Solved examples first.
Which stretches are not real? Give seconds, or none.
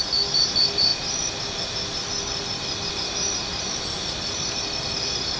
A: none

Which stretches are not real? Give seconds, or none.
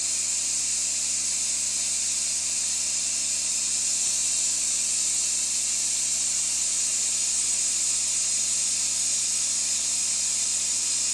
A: none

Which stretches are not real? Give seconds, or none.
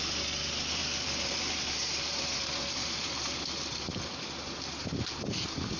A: 0.8-3.8 (vocoder, BigVGAN v2)